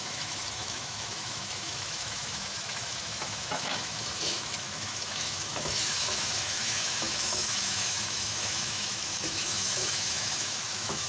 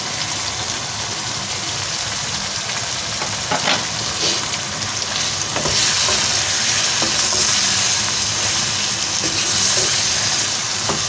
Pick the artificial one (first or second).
first